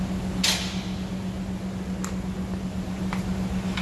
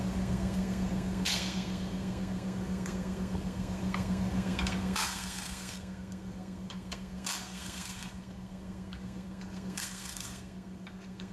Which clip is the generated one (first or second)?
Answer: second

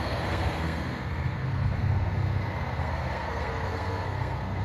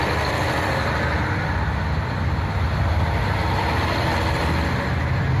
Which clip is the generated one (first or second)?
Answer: first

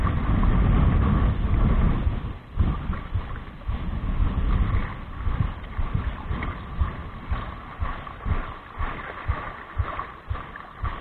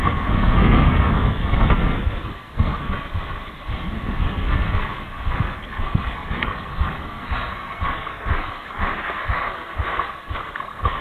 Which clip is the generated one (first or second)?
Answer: second